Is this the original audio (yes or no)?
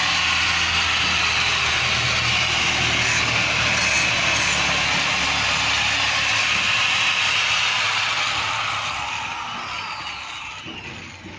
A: yes